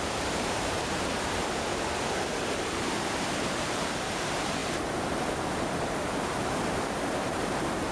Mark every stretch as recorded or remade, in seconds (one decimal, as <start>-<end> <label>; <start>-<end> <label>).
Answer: 0.0-1.4 remade; 1.4-2.7 recorded; 2.7-7.9 remade